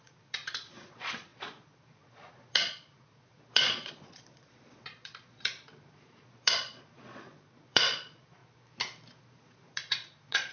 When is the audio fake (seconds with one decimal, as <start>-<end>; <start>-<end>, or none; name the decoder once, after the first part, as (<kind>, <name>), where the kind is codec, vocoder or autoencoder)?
0.0-8.4 (vocoder, Vocos); 9.2-10.5